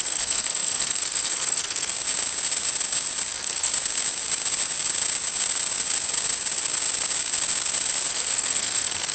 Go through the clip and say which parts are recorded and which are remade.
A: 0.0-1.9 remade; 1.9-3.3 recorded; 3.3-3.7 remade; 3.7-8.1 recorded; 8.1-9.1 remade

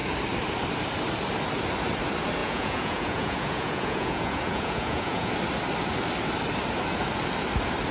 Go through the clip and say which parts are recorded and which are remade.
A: 0.0-2.4 recorded; 2.4-5.3 remade; 5.3-7.9 recorded

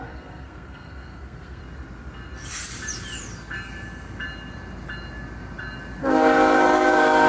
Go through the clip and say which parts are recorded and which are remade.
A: 0.0-1.6 remade; 1.6-6.0 recorded; 6.0-7.3 remade

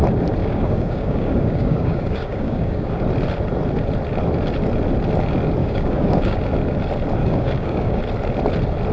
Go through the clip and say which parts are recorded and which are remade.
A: 0.0-0.4 recorded; 0.4-2.9 remade; 2.9-5.6 recorded; 5.6-6.4 remade; 6.4-7.2 recorded; 7.2-8.0 remade; 8.0-8.9 recorded